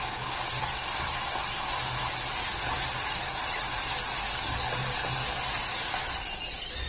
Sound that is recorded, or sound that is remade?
recorded